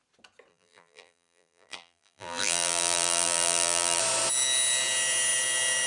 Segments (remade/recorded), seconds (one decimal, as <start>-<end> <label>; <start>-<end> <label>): 0.0-0.5 recorded; 0.5-4.0 remade; 4.0-5.9 recorded